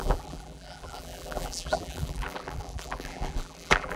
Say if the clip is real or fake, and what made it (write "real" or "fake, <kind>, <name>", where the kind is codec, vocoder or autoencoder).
fake, vocoder, BigVGAN v2